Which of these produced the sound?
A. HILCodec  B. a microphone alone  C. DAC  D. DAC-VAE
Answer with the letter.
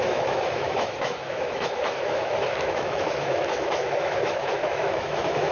D